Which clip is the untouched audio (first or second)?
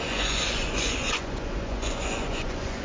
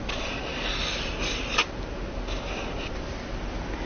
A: second